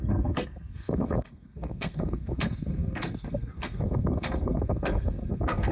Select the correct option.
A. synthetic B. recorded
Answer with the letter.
A